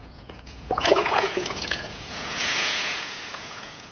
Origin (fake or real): fake